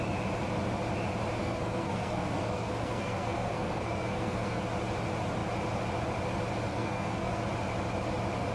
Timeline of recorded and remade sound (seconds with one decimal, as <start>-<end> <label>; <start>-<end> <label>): 0.0-1.4 recorded; 1.4-4.6 remade; 4.6-6.7 recorded; 6.7-7.4 remade; 7.4-8.5 recorded